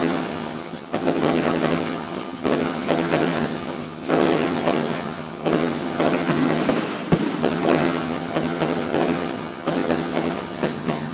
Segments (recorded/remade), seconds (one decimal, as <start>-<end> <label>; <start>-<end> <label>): 0.0-6.6 remade; 6.6-7.4 recorded; 7.4-11.1 remade